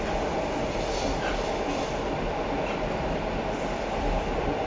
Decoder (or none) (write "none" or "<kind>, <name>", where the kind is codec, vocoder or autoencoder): none